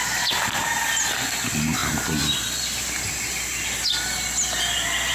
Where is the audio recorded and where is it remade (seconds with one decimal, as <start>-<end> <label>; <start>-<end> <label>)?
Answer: 0.0-5.1 recorded